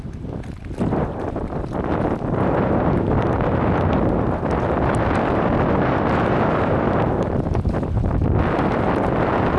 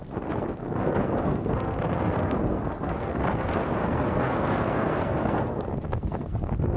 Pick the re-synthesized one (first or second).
second